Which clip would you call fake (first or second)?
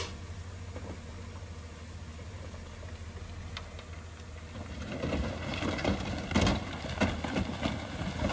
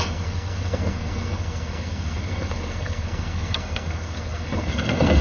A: second